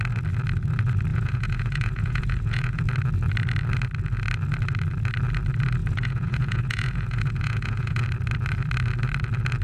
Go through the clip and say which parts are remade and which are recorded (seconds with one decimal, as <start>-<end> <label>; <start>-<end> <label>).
0.0-1.1 recorded; 1.1-2.8 remade; 2.8-5.8 recorded; 5.8-8.0 remade; 8.0-9.6 recorded